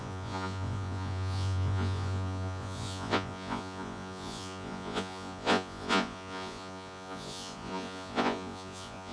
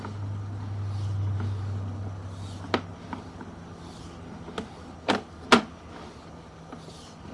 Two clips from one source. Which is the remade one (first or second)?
first